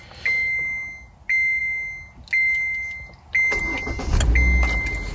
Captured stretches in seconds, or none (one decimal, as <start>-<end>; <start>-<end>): 0.0-5.1